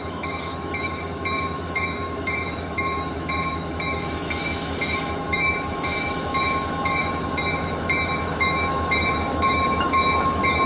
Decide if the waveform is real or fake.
fake